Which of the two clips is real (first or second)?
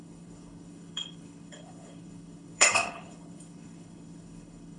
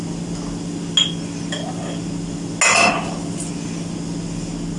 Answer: second